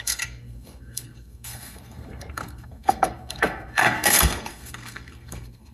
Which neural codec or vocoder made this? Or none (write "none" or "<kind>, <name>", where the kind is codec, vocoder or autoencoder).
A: codec, SNAC